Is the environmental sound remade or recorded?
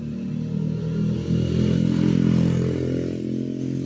recorded